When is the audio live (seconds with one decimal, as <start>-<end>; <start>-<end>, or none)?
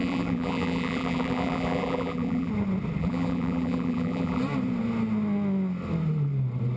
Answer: 2.5-3.0; 4.4-6.8